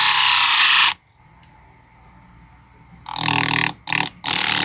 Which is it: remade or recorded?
recorded